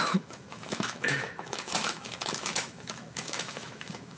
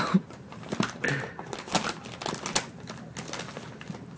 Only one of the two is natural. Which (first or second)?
second